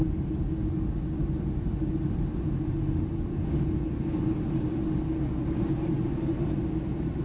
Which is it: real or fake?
real